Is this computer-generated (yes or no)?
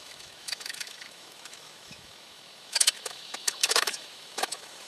yes